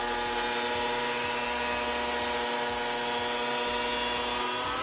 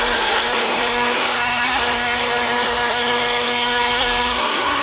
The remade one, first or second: second